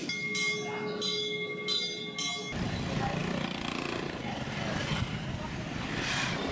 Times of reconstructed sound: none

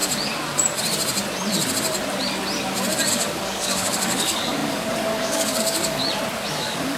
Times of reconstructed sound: 3.1-6.0 (codec, DAC); 6.5-7.0

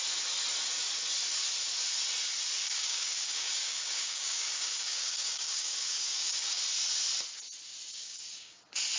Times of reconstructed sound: 2.6-6.6 (codec, DAC); 7.9-8.6

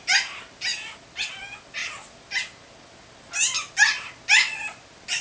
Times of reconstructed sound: none

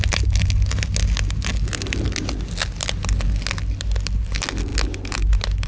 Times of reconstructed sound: none

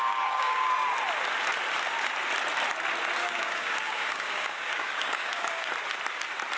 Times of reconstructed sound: 0.0-0.7 (codec, DAC); 3.2-5.7

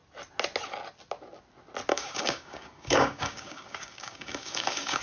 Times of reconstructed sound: 1.9-5.0 (codec, DAC)

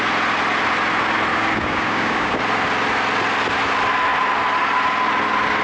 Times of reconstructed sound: 1.3-2.4 (codec, DAC)